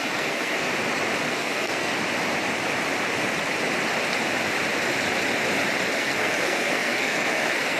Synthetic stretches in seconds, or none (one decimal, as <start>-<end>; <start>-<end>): 0.0-0.7; 1.3-1.9; 5.9-7.8